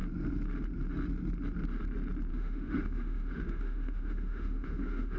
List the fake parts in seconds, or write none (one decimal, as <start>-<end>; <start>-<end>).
2.3-5.2